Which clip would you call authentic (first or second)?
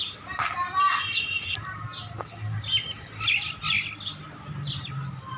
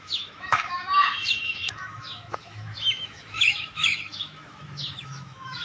first